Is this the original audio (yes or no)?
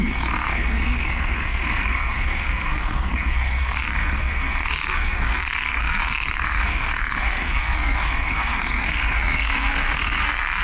no